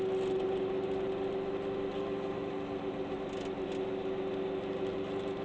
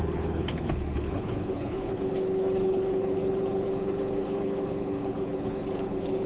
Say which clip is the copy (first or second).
second